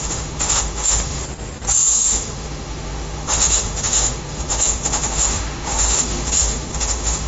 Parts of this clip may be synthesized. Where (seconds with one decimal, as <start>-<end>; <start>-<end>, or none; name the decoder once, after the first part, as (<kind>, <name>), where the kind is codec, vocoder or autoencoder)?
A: 0.0-1.2 (autoencoder, DAC-VAE); 1.9-7.3